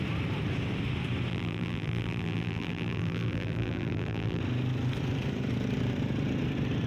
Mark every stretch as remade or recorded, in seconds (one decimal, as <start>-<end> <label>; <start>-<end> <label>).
0.0-1.3 recorded; 1.3-4.4 remade; 4.4-6.9 recorded